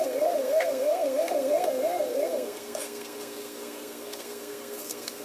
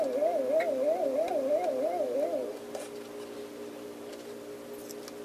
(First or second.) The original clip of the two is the second